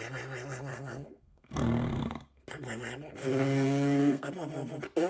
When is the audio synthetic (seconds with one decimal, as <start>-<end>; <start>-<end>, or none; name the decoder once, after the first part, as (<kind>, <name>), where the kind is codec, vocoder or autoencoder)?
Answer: 0.7-2.4 (codec, SNAC); 3.2-4.3